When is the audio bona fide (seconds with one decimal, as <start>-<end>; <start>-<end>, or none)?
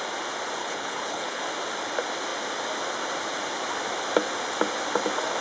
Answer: 0.0-0.6; 1.4-5.4